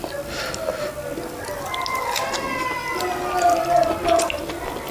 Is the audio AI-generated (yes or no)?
no